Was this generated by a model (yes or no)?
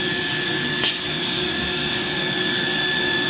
yes